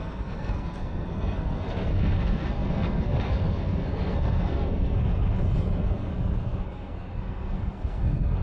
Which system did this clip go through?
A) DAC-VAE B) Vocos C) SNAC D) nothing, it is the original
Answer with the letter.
C